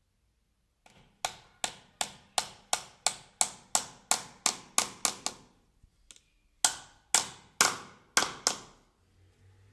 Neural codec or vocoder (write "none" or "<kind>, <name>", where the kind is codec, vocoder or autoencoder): none